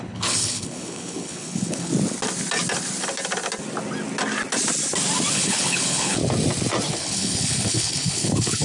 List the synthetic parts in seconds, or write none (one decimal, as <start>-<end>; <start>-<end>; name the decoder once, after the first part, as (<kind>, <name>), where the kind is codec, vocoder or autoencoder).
0.0-1.9 (codec, HILCodec); 5.3-6.2; 6.9-8.6